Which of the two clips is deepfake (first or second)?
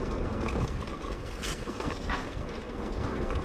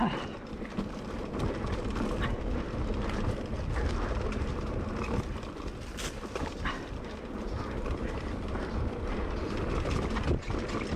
first